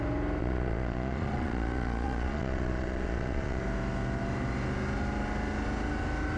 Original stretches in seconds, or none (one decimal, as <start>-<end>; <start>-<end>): 0.0-0.4; 3.6-6.4